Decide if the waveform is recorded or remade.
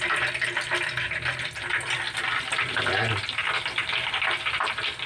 recorded